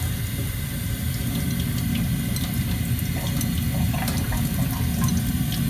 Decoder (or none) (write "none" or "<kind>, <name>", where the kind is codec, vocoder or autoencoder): none